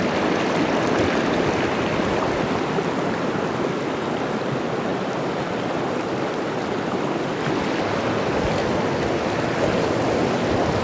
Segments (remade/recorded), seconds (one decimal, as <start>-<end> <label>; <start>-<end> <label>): 0.0-10.8 recorded